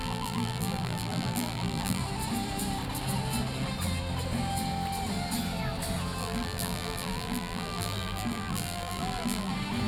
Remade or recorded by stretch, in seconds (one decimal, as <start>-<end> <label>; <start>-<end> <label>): 0.0-2.0 remade; 2.0-6.2 recorded; 6.2-9.5 remade; 9.5-9.9 recorded